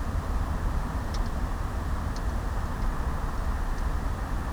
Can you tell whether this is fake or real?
real